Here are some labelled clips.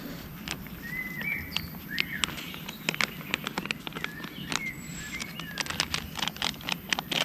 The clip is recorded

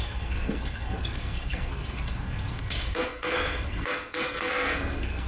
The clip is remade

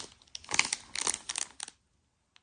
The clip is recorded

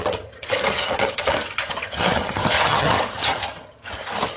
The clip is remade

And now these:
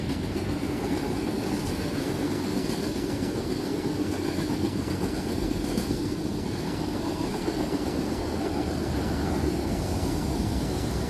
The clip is remade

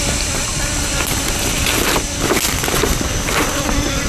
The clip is recorded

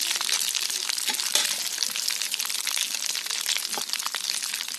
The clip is remade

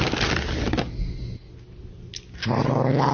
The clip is recorded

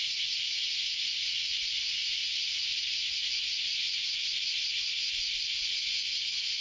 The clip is recorded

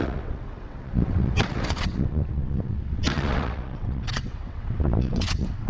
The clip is remade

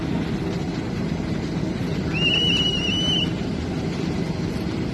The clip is recorded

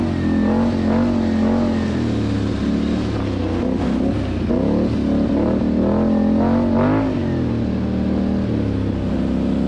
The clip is recorded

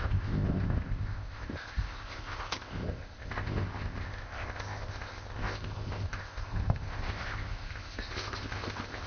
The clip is remade